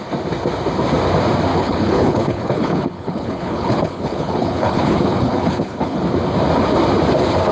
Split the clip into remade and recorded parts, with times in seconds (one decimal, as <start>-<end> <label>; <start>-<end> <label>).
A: 0.0-1.5 recorded; 1.5-6.0 remade; 6.0-7.5 recorded